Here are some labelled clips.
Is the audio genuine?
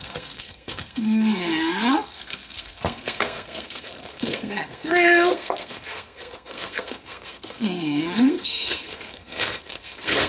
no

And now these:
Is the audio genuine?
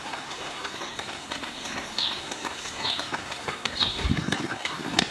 no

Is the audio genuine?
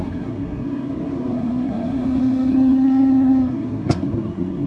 no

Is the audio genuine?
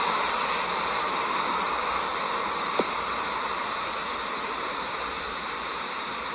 yes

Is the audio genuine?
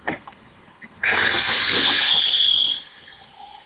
no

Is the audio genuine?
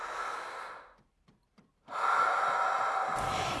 yes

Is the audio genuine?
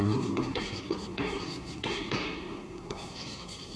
no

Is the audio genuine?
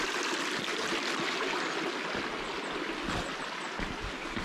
yes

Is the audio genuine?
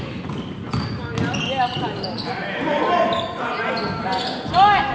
yes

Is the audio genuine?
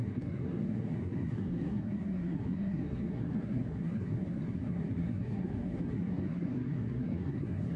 no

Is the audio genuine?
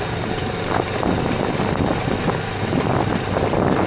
yes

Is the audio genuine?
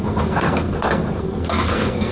no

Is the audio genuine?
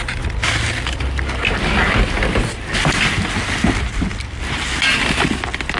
yes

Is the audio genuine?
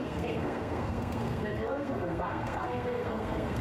no